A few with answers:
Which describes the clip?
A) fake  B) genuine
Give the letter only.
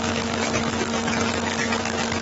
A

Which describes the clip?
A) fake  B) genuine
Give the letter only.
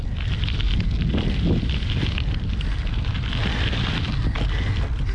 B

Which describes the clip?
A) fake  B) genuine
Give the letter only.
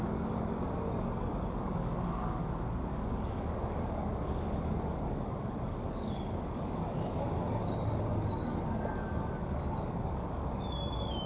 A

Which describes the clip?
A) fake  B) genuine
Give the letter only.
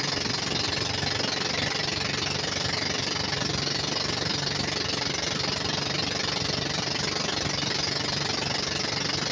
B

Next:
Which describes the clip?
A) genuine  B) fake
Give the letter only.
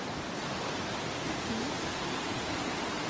A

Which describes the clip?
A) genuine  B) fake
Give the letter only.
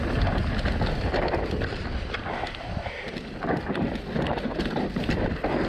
A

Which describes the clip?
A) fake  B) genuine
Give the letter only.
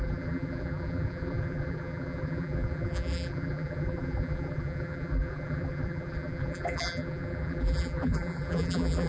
A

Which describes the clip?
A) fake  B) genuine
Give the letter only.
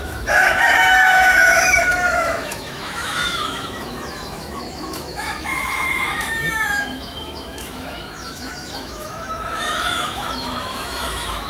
A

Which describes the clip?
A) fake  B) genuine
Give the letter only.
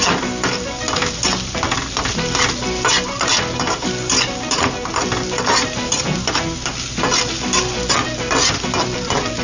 B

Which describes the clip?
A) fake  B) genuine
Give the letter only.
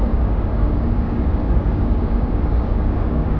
A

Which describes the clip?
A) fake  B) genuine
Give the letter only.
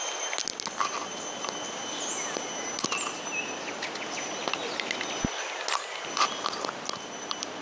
B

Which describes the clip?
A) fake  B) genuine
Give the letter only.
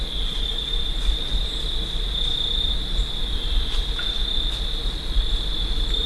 B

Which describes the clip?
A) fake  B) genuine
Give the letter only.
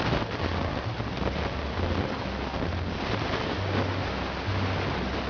B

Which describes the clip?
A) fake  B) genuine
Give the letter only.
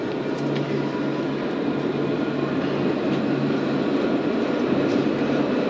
B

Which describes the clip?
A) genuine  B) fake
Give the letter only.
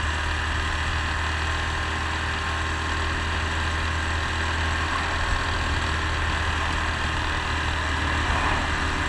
A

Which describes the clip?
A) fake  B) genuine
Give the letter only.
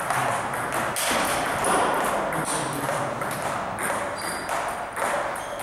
B